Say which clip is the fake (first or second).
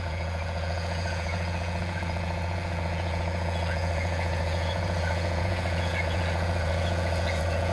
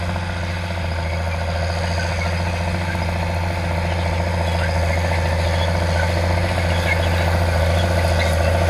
first